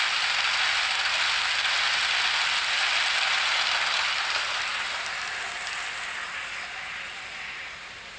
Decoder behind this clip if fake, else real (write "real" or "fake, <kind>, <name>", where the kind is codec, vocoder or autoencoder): real